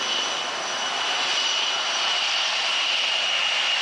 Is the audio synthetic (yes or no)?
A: no